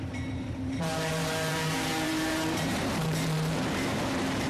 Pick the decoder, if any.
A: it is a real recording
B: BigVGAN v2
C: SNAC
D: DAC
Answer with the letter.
B